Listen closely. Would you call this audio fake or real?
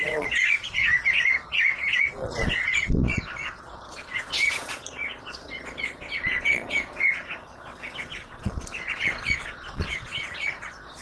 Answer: fake